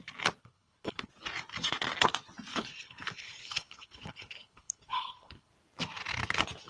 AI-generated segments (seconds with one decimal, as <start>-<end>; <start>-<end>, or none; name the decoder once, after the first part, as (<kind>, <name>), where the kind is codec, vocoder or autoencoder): 0.4-1.1 (codec, HILCodec); 2.5-5.5